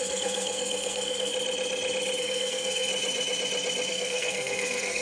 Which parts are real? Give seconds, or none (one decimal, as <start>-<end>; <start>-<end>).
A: 1.3-2.2; 2.9-3.9